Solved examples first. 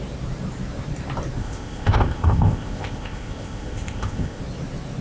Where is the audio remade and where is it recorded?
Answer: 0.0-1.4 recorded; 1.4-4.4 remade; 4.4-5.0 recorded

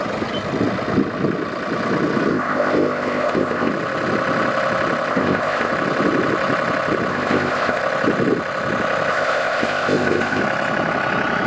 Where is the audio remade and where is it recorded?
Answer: 0.0-2.3 recorded; 2.3-3.7 remade; 3.7-5.1 recorded; 5.1-5.7 remade; 5.7-7.1 recorded; 7.1-7.8 remade; 7.8-9.1 recorded; 9.1-10.4 remade; 10.4-11.5 recorded

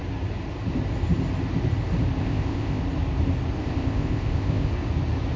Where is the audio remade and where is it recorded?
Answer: 0.0-2.2 recorded; 2.2-2.8 remade; 2.8-3.6 recorded; 3.6-4.7 remade; 4.7-5.4 recorded

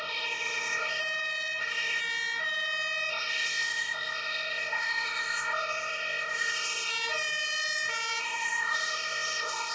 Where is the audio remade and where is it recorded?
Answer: 0.0-1.0 remade; 1.0-1.6 recorded; 1.6-2.0 remade; 2.0-3.1 recorded; 3.1-6.9 remade; 6.9-8.2 recorded; 8.2-9.7 remade

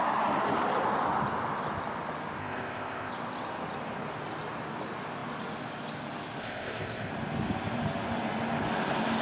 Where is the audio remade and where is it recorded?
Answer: 0.0-2.4 recorded; 2.4-3.1 remade; 3.1-6.4 recorded; 6.4-7.1 remade; 7.1-9.2 recorded

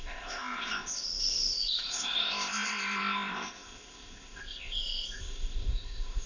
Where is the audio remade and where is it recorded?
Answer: 0.0-6.3 remade

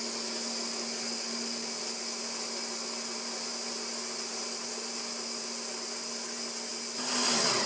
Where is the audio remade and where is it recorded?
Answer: 0.0-7.7 recorded